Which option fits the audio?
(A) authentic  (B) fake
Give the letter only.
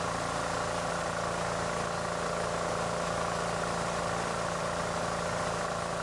A